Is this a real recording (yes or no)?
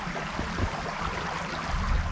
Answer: yes